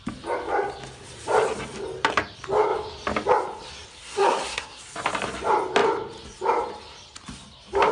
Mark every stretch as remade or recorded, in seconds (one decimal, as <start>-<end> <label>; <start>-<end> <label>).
0.0-4.0 recorded; 4.0-4.8 remade; 4.8-7.9 recorded